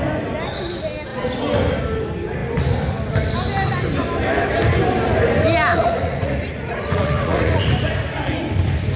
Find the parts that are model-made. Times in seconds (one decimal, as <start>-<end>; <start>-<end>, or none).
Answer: 5.7-7.7